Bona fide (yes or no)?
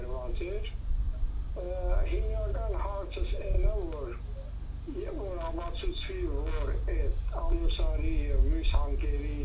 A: yes